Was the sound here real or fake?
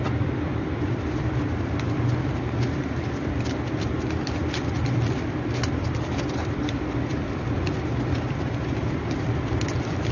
fake